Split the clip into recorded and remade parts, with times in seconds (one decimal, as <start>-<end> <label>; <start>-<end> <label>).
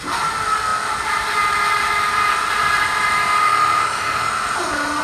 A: 0.0-3.4 recorded; 3.4-4.3 remade; 4.3-5.0 recorded